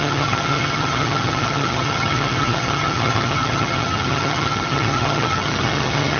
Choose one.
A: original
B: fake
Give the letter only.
B